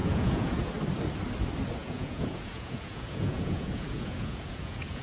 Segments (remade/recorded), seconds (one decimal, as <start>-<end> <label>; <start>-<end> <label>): 0.0-0.7 remade; 0.7-1.8 recorded; 1.8-5.0 remade